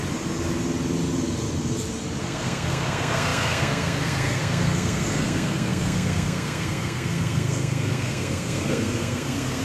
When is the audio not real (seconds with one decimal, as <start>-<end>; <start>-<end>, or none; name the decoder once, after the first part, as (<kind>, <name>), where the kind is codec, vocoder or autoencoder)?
2.2-9.6 (codec, SNAC)